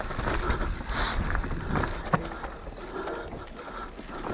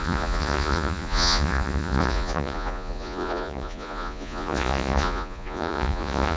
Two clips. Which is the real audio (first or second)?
first